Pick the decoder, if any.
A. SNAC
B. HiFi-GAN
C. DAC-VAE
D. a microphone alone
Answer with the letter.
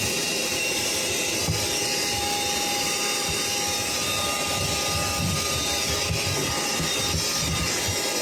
D